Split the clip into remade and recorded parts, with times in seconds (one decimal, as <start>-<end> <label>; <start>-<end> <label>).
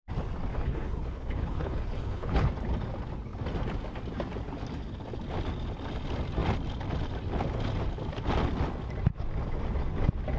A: 0.0-0.5 recorded; 0.5-2.5 remade; 2.5-10.4 recorded